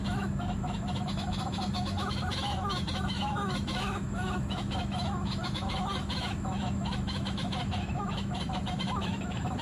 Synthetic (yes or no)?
yes